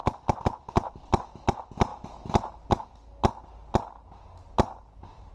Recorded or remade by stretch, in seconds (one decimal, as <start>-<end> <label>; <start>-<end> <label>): 0.0-5.3 recorded